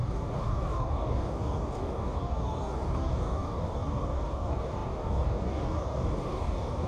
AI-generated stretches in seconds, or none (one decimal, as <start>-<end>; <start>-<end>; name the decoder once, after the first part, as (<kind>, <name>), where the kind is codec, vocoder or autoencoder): 0.0-6.9 (codec, DAC)